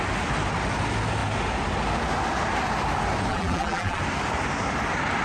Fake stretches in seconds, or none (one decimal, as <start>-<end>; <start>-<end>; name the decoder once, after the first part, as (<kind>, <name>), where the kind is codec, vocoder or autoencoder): 3.3-4.0 (vocoder, BigVGAN v2)

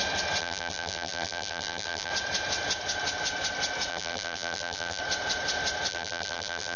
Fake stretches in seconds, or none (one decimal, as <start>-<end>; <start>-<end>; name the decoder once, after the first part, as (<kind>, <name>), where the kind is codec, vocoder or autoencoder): 0.4-2.1 (vocoder, BigVGAN v2); 3.9-5.0; 5.9-6.8

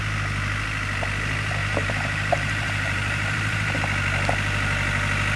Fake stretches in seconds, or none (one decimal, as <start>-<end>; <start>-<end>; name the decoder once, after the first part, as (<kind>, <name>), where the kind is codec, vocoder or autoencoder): 1.6-3.8 (vocoder, BigVGAN v2)

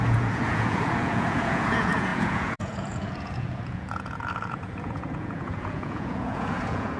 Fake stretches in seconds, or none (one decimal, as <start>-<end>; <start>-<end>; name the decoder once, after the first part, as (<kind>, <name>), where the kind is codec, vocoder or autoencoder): 0.0-7.0 (vocoder, Vocos)

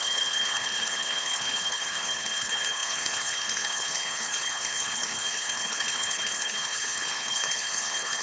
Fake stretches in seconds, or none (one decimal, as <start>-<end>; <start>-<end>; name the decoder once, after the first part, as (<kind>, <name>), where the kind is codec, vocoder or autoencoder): 0.0-8.2 (codec, HILCodec)